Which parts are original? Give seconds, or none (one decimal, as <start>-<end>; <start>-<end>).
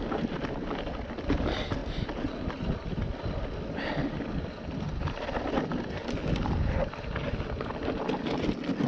0.0-8.9